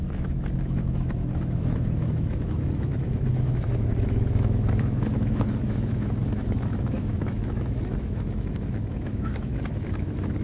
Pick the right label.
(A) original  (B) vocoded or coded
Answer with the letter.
B